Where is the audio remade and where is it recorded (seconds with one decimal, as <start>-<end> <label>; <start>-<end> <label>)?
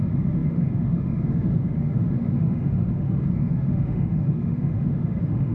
0.0-5.5 remade